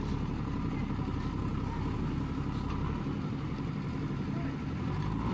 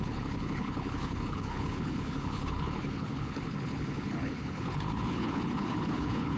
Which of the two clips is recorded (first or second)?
first